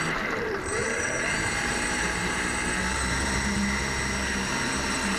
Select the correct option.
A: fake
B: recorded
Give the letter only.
A